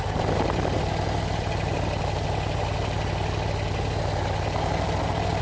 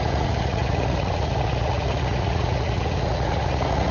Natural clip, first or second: first